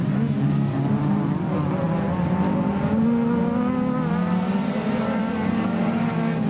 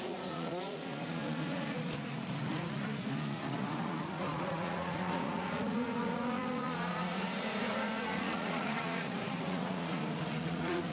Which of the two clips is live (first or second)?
first